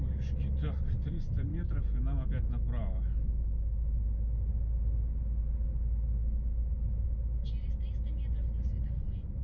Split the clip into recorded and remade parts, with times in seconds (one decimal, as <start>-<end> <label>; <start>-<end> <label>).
0.0-9.4 recorded